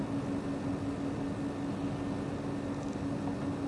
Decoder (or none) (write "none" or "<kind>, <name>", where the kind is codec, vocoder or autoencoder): none